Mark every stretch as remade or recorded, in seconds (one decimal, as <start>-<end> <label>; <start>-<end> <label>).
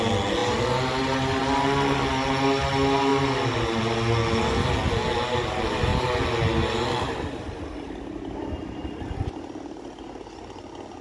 0.0-11.0 recorded